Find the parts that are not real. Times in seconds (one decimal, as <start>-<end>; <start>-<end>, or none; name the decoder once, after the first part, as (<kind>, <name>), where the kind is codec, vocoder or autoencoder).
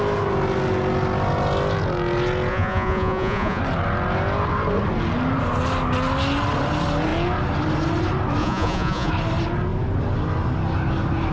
2.5-3.6 (vocoder, Vocos); 8.4-9.1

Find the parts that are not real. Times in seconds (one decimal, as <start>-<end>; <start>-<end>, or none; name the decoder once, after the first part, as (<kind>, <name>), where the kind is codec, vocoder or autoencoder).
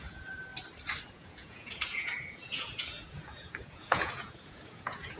0.0-0.5 (vocoder, Vocos); 1.0-5.2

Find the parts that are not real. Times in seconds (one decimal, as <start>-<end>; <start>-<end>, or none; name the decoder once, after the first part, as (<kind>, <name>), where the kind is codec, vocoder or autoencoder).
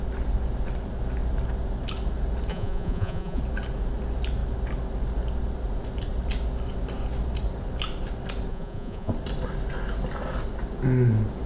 2.5-3.4 (vocoder, Vocos); 8.5-9.1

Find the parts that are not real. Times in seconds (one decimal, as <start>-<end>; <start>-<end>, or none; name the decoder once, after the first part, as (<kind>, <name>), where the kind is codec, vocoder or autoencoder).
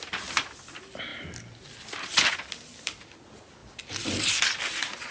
none